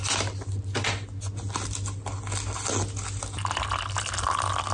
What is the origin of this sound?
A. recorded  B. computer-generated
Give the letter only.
A